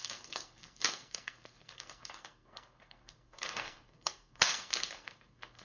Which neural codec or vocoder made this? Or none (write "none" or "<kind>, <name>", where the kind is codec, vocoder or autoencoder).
codec, SNAC